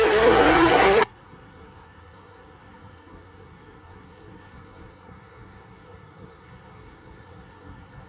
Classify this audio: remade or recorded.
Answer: remade